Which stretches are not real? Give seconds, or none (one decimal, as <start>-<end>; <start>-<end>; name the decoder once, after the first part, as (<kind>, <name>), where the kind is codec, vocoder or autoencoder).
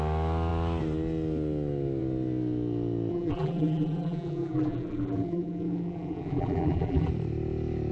3.1-7.1 (vocoder, BigVGAN v2)